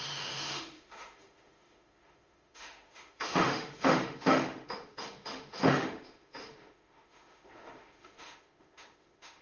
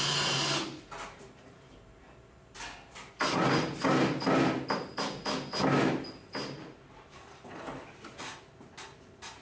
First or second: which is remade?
first